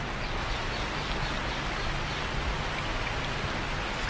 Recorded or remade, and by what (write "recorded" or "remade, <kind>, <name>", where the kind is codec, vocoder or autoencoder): recorded